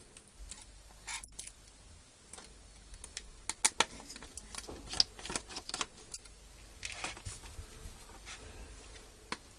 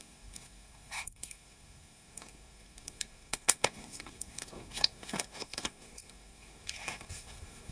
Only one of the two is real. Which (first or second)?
first